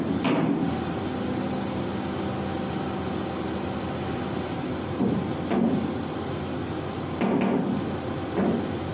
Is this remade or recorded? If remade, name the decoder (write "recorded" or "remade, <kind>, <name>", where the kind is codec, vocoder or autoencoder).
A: recorded